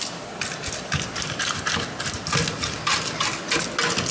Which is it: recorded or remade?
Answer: recorded